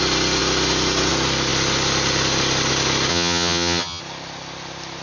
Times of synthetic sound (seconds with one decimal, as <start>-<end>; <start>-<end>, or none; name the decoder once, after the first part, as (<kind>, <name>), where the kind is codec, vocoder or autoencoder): 3.1-4.0 (vocoder, HiFi-GAN)